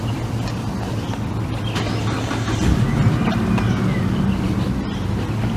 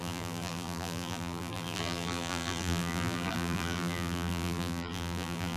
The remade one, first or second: second